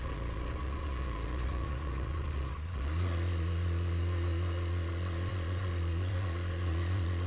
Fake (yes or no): yes